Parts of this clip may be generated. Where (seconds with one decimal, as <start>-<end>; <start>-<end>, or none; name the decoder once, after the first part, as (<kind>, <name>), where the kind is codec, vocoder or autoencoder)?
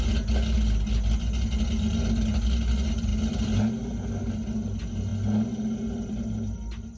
none